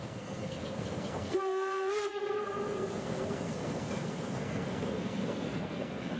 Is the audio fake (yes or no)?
yes